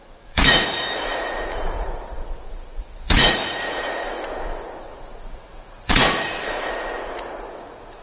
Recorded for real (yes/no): no